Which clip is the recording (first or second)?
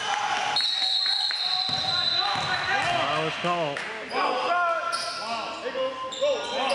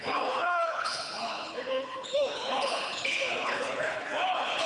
first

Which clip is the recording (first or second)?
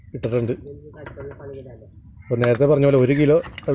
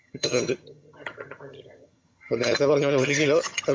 first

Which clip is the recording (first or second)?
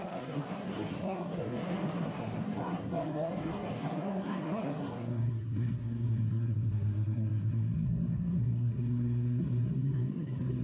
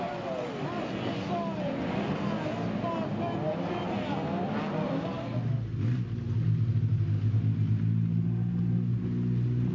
second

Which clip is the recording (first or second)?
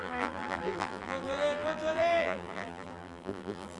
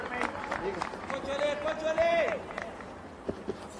second